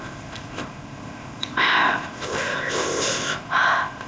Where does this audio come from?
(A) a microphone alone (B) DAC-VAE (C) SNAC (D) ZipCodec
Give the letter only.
D